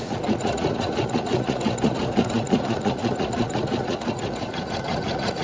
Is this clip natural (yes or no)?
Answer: no